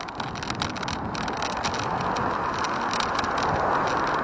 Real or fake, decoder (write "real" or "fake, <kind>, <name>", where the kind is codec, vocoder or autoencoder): real